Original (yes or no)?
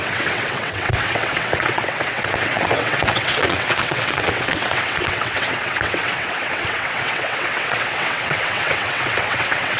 no